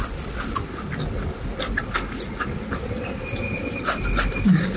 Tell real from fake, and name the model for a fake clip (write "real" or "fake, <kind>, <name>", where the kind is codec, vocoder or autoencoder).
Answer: real